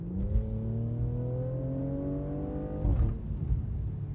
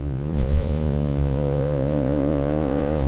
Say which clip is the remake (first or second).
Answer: second